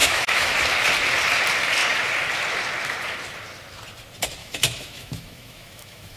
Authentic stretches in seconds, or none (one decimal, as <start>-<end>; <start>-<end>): 0.6-4.4